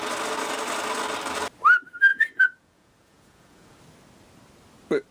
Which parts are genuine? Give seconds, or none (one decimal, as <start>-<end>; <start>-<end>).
0.0-2.1; 3.8-5.1